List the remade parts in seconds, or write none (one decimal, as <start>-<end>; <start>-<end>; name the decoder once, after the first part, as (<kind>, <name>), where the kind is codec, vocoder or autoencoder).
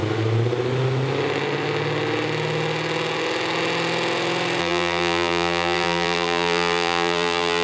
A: 4.6-7.6 (vocoder, BigVGAN v2)